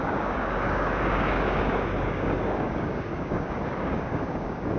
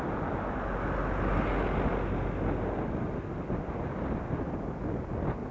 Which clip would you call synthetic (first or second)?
first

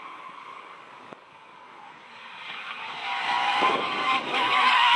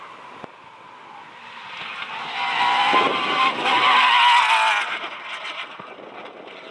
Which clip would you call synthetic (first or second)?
first